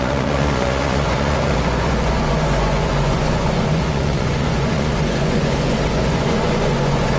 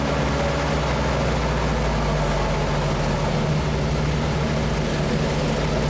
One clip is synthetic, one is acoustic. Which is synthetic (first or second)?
first